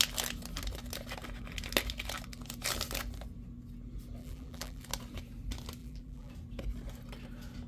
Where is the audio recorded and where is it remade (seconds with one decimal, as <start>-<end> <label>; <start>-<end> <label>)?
0.0-4.2 recorded; 4.2-4.8 remade; 4.8-5.8 recorded; 5.8-6.3 remade; 6.3-7.7 recorded